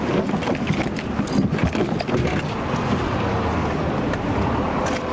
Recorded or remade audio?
recorded